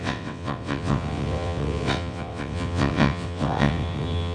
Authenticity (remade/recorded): remade